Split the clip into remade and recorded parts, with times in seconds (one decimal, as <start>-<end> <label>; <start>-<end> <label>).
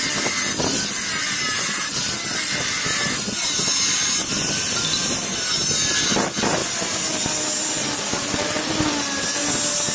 0.0-9.9 recorded